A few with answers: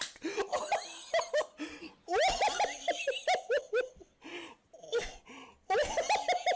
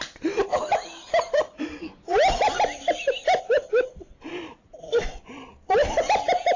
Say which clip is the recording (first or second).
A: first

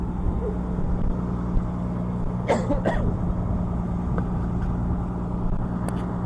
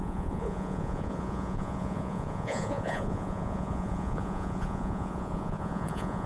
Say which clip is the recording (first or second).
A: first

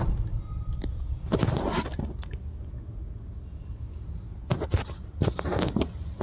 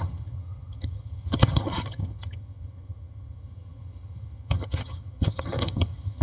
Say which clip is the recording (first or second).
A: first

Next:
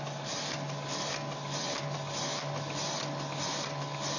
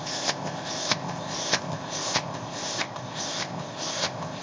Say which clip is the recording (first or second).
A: first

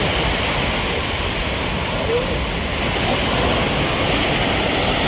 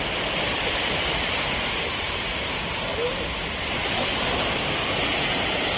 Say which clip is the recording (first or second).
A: first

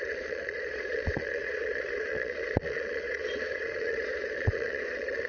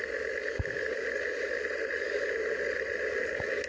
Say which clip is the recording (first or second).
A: second